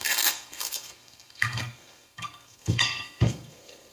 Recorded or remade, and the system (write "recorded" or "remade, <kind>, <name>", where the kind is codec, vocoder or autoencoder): remade, codec, SNAC